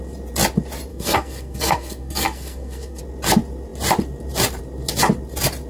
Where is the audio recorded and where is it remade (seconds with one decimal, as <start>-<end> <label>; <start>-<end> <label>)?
0.0-0.9 recorded; 0.9-3.0 remade; 3.0-5.7 recorded